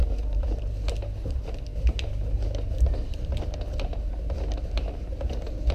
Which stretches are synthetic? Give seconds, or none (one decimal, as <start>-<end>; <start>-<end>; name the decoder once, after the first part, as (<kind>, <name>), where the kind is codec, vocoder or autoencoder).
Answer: 0.0-0.7 (vocoder, BigVGAN v2)